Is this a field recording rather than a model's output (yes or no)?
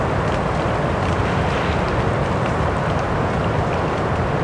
yes